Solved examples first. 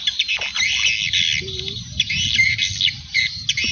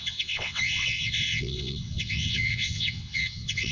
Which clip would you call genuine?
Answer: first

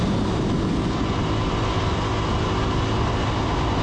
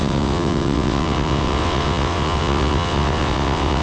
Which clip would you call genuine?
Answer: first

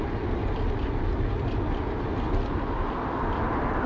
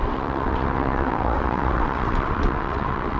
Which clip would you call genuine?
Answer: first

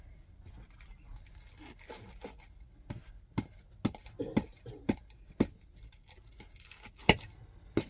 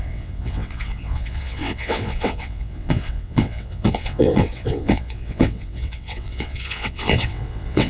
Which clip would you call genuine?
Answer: first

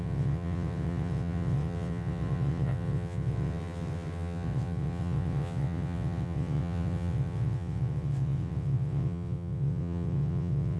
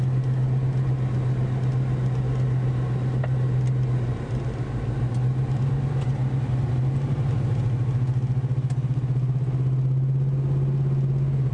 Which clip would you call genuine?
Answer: second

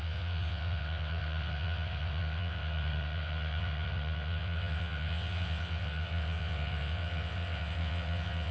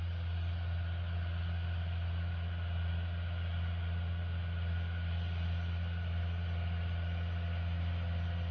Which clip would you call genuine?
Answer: second